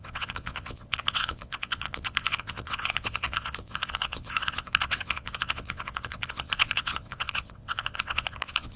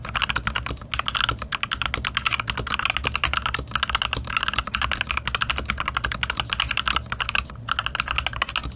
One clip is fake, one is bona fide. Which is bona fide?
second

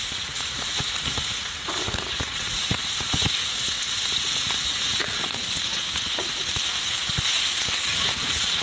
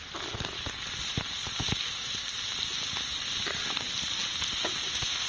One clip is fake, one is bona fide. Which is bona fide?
second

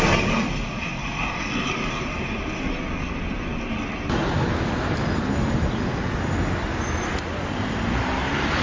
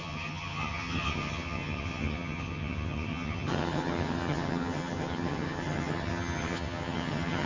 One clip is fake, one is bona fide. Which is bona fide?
first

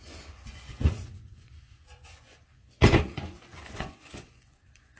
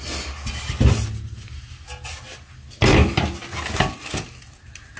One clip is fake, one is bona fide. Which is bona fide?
second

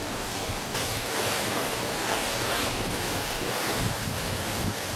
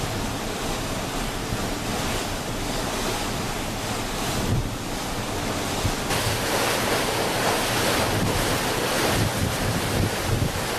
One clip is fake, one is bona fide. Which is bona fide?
second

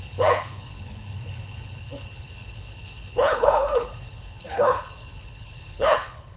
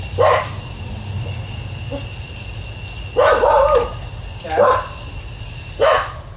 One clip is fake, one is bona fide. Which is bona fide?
second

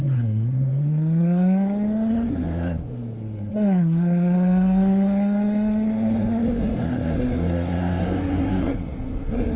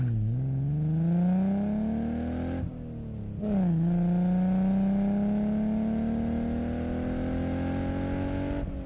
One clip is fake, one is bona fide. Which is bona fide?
second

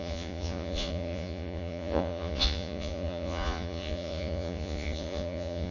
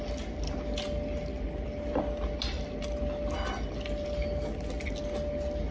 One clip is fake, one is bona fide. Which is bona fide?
second